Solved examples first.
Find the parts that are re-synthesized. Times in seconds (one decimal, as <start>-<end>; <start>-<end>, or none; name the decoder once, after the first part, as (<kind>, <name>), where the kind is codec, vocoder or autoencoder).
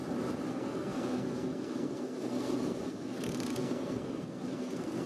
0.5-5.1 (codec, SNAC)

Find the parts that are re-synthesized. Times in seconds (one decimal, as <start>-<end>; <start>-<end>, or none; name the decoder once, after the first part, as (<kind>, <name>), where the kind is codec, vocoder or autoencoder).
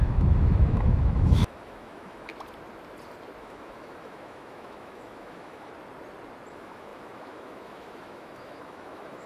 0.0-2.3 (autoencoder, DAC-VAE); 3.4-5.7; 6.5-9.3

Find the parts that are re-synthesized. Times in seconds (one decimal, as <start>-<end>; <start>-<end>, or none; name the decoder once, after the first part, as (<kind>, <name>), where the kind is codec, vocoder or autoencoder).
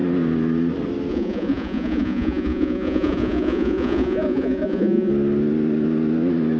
1.1-5.1 (vocoder, Vocos)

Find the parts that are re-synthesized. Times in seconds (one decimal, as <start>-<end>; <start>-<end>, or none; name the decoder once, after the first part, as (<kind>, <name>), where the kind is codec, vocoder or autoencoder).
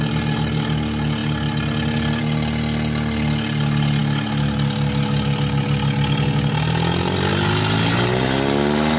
none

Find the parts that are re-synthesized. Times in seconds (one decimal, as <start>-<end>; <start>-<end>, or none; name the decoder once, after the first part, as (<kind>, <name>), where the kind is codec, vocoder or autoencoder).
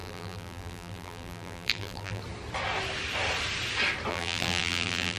0.0-2.2 (vocoder, BigVGAN v2); 4.1-5.2